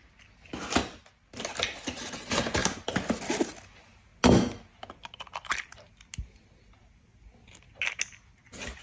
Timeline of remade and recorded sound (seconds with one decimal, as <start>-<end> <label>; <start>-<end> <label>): 0.0-8.8 recorded